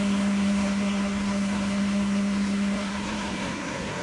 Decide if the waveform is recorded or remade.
remade